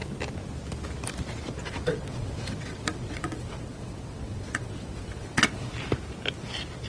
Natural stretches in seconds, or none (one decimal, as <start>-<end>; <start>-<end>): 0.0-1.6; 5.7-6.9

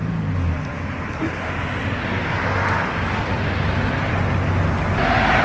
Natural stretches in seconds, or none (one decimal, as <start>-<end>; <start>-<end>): 0.0-5.4

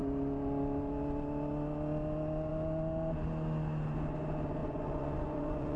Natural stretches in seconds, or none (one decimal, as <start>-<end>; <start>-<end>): 0.0-4.6

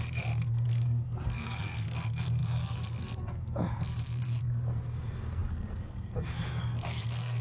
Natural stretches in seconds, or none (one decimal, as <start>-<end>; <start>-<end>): none

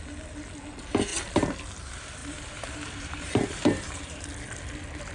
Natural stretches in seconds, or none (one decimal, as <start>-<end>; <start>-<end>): 0.0-2.2; 4.3-5.1

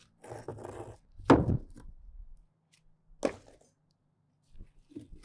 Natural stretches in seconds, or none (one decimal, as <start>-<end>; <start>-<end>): 0.0-5.2

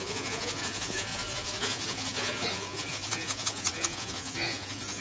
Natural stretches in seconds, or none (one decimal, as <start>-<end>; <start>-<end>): none

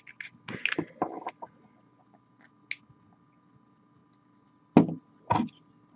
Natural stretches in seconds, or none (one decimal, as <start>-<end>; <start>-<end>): 0.0-6.0